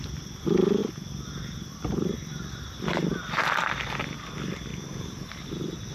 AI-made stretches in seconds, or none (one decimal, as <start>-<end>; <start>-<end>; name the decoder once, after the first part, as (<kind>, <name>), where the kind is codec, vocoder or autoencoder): 4.7-5.5 (vocoder, BigVGAN v2)